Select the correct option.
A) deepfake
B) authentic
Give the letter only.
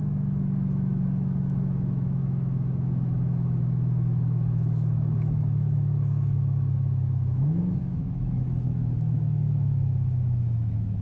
A